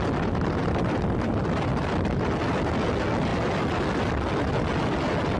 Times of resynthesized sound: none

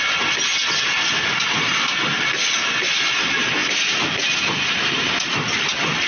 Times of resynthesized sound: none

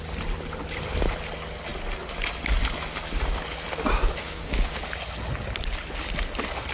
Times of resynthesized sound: 4.2-4.8 (codec, DAC)